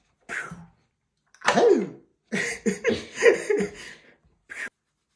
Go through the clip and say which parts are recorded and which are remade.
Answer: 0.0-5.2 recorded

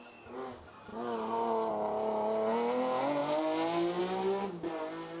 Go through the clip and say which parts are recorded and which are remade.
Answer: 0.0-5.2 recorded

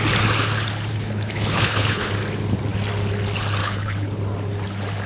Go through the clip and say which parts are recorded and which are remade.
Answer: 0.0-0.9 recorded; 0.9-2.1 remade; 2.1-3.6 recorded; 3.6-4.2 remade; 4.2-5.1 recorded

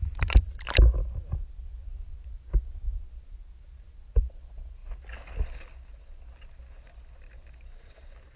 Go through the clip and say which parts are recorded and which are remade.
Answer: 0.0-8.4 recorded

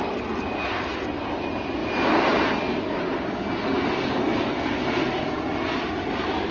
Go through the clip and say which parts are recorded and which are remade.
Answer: 0.0-6.5 recorded

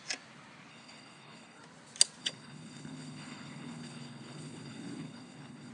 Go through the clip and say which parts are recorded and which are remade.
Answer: 0.0-0.7 recorded; 0.7-1.6 remade; 1.6-2.2 recorded; 2.2-5.7 remade